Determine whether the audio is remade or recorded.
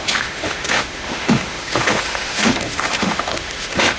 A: remade